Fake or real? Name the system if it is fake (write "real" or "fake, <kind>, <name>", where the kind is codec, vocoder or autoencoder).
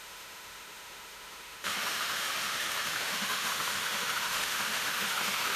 fake, autoencoder, DAC-VAE